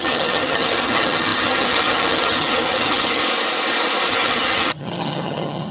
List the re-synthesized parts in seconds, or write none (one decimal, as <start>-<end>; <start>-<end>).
0.0-3.2; 4.1-5.7